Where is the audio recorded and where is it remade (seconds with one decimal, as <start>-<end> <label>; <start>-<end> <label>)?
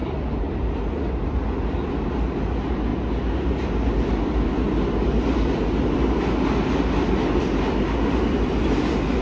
0.0-9.2 recorded